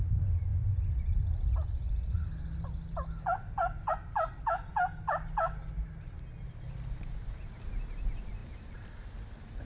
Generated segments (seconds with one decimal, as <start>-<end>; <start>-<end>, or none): none